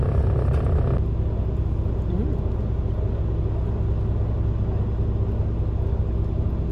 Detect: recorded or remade recorded